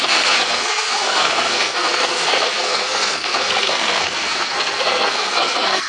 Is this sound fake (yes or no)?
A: yes